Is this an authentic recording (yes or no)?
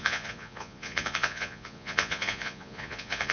no